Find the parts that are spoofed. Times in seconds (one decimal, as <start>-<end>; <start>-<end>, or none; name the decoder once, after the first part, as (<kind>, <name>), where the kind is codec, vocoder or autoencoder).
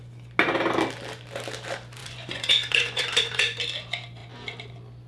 2.0-3.6 (vocoder, Vocos)